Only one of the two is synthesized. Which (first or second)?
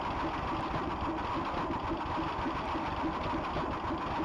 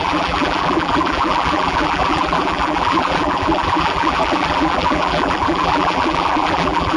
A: second